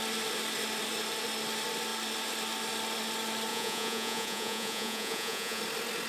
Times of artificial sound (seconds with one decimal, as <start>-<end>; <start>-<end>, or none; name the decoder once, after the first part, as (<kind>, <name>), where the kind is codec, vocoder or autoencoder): 3.5-5.6 (vocoder, Vocos)